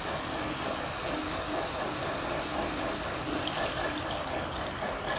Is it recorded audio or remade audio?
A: recorded